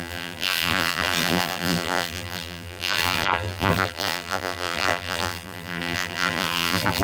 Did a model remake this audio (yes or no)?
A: yes